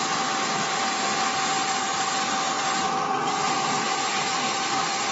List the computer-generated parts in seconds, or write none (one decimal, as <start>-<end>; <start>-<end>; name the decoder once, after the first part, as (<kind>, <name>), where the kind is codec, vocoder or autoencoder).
none